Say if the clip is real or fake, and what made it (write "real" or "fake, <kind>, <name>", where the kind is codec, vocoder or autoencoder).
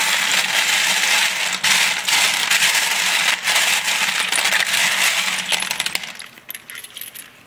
real